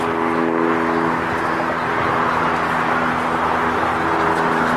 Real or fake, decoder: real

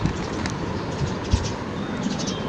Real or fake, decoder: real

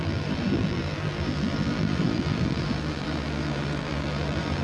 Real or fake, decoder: fake, vocoder, BigVGAN v2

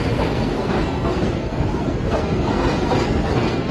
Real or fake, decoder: fake, codec, SNAC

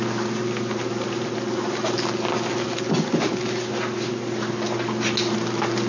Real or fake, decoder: real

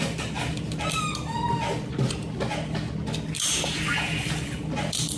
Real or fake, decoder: real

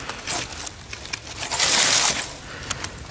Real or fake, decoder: real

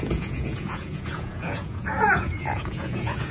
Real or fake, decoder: fake, vocoder, Vocos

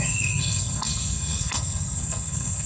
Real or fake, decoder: fake, codec, SNAC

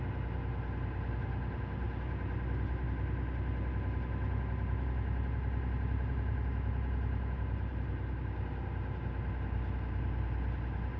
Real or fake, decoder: real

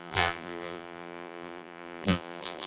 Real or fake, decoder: fake, vocoder, BigVGAN v2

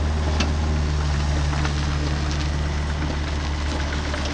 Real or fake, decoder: real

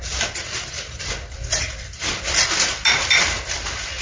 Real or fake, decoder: real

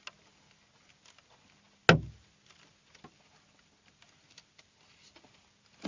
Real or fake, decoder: real